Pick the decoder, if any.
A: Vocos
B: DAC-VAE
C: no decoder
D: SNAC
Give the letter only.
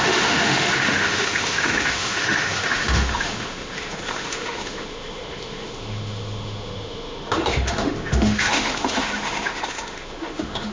B